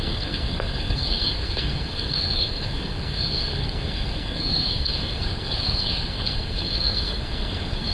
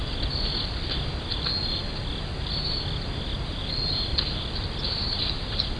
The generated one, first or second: first